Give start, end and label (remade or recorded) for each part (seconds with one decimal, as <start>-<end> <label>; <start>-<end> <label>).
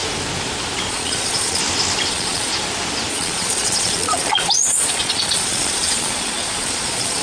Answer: 0.0-0.9 recorded; 0.9-1.6 remade; 1.6-2.1 recorded; 2.1-2.5 remade; 2.5-3.1 recorded; 3.1-7.2 remade